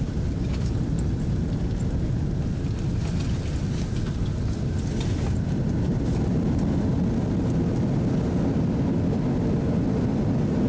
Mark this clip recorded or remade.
recorded